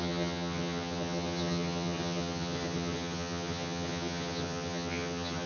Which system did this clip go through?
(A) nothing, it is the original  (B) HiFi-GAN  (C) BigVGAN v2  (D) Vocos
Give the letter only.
B